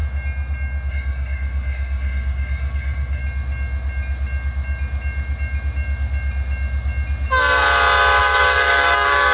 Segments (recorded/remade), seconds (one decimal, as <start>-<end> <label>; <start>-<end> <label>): 0.0-0.9 recorded; 0.9-3.2 remade; 3.2-8.2 recorded; 8.2-9.3 remade